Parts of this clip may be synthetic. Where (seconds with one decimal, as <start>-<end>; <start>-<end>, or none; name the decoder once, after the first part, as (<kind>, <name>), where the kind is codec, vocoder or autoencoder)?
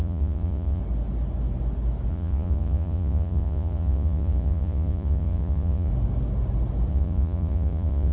0.0-0.8 (vocoder, Vocos); 2.1-5.9; 6.9-8.1